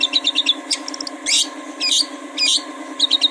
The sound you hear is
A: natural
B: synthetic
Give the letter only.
A